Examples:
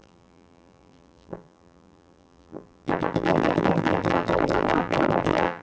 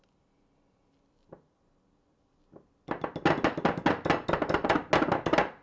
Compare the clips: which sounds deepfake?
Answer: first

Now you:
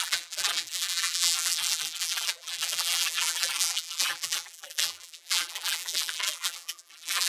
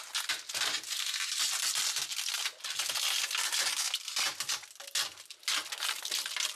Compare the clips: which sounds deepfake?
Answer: first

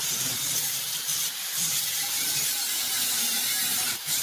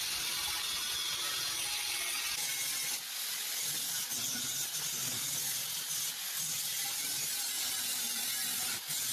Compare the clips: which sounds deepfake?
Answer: first